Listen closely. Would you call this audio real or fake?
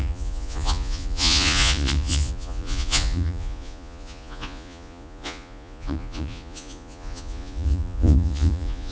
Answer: fake